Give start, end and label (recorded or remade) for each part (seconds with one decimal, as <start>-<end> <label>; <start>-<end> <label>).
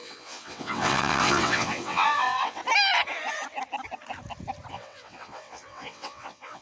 0.0-2.6 remade; 2.6-4.7 recorded; 4.7-6.6 remade